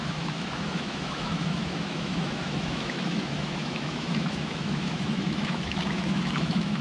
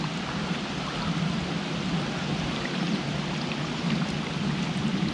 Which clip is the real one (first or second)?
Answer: second